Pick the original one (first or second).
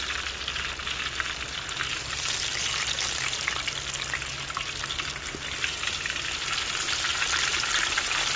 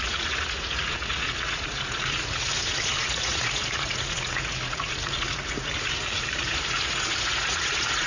first